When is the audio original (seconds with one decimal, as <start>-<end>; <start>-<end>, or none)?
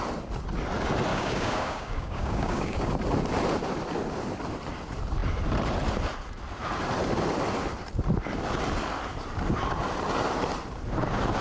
0.0-1.1; 2.8-11.4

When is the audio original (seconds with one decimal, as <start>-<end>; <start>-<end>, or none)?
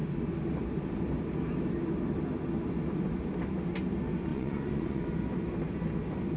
0.0-4.3; 5.0-6.4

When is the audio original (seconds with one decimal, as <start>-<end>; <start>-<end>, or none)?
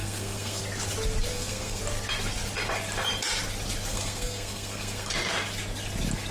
0.6-1.3; 1.8-3.9; 5.1-6.3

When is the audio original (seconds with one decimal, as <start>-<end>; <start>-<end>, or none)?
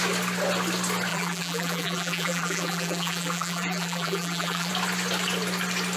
0.0-1.1; 4.7-6.0